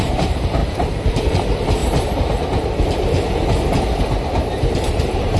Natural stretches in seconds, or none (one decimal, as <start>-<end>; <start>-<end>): 1.8-5.0